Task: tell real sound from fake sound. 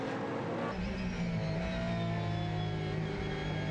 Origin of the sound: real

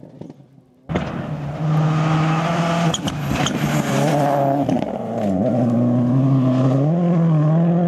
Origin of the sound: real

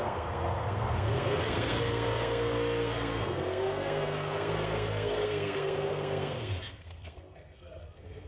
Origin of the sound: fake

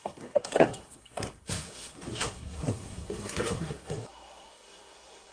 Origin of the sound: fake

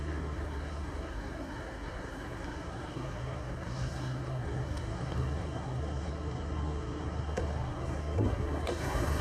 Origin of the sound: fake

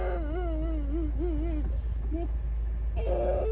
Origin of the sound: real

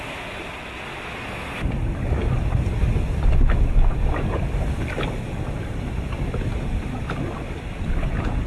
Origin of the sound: real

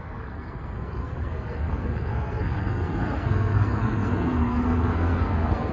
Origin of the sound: fake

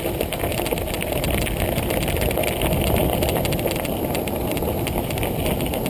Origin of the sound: real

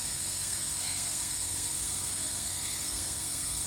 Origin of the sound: fake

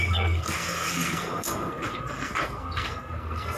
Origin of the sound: fake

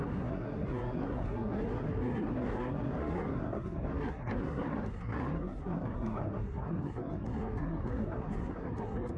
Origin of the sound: fake